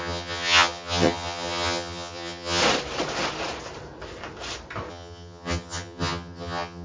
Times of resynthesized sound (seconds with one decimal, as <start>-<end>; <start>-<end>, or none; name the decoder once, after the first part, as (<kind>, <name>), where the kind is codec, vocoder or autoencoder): 0.0-2.6 (vocoder, HiFi-GAN); 4.9-6.8